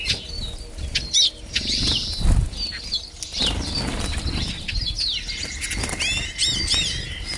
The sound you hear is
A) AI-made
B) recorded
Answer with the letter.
B